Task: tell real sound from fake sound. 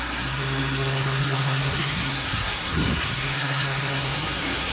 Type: fake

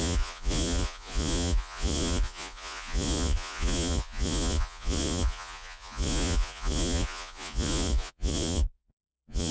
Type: fake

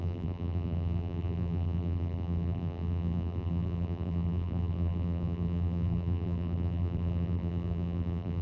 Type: fake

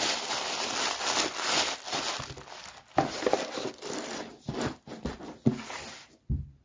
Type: real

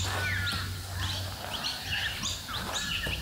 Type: real